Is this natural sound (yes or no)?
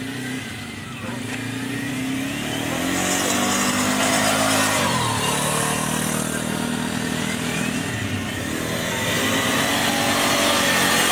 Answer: yes